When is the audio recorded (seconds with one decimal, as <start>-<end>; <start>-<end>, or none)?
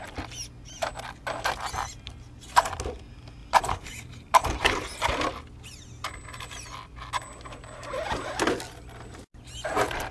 0.0-3.4; 4.8-10.1